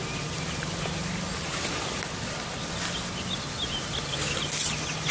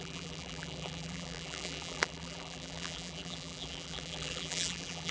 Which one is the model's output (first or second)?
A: second